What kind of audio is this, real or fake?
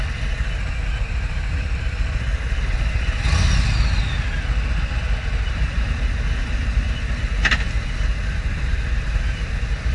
real